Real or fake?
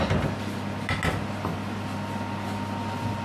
real